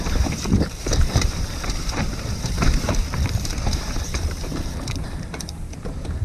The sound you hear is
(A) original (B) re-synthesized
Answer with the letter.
B